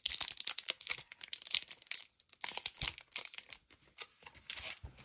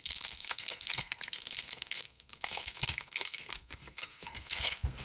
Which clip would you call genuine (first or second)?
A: first